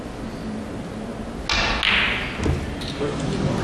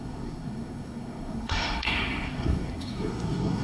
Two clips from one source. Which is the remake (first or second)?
second